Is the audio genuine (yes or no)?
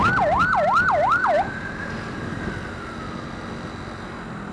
yes